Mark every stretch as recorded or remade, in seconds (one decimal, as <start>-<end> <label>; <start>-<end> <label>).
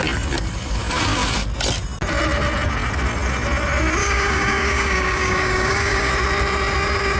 0.0-4.0 recorded; 4.0-6.1 remade; 6.1-7.2 recorded